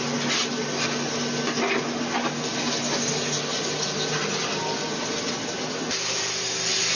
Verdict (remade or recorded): recorded